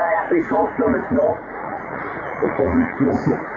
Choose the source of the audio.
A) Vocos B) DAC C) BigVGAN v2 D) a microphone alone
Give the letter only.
A